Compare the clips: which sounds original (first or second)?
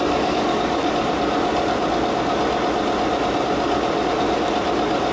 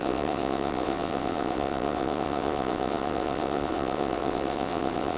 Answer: first